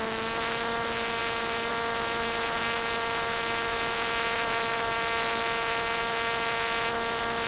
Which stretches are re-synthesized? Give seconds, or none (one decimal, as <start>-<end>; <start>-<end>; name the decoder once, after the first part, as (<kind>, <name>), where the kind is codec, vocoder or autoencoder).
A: none